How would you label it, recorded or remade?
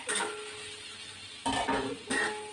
recorded